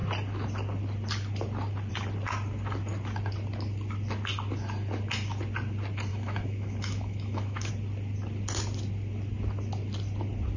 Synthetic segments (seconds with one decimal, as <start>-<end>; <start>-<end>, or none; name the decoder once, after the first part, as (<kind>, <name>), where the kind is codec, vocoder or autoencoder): 6.1-7.7 (autoencoder, DAC-VAE)